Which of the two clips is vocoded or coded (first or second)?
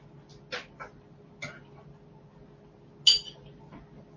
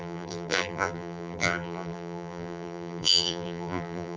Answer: second